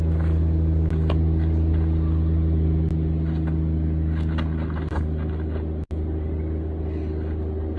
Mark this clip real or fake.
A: real